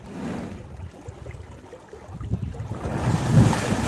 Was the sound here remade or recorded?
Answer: recorded